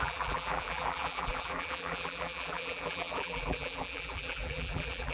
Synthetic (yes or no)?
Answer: yes